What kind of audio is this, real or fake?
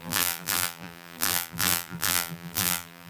fake